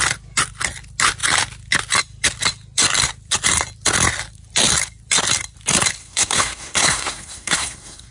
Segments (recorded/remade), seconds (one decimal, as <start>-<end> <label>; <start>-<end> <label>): 0.0-6.0 recorded; 6.0-8.1 remade